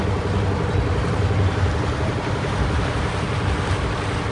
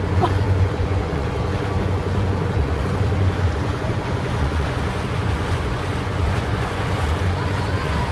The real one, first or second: first